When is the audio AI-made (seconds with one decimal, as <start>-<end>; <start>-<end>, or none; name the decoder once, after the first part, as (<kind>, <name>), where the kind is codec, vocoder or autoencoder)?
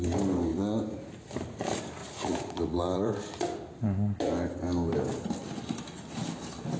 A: 2.0-3.1 (vocoder, Vocos)